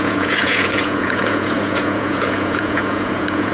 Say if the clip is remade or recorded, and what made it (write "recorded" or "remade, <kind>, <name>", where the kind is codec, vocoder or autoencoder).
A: remade, vocoder, Vocos